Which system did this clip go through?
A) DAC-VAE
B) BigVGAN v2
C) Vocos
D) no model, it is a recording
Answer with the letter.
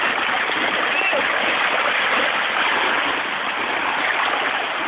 D